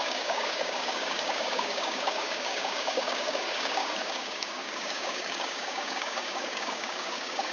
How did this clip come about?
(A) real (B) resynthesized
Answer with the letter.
B